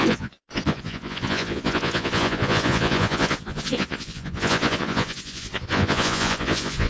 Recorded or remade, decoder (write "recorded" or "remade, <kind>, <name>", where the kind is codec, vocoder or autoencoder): remade, vocoder, Vocos